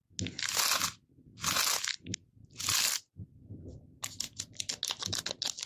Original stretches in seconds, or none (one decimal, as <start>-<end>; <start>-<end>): 0.0-5.7